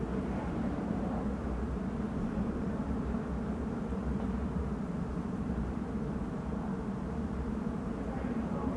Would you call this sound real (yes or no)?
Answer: no